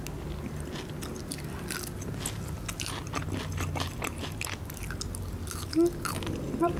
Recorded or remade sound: recorded